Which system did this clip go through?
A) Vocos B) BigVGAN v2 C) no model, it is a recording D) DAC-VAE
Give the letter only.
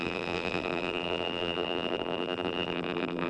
B